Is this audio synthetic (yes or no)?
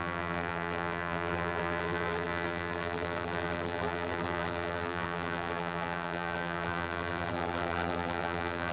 yes